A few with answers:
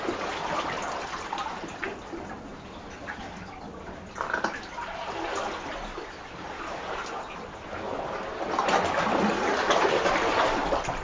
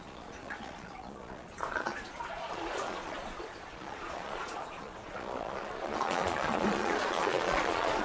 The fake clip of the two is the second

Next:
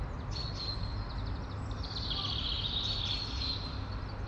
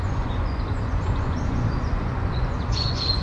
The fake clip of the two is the second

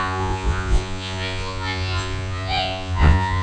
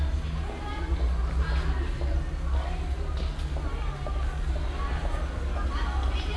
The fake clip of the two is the first